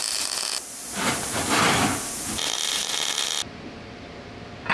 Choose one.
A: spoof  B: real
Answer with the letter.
B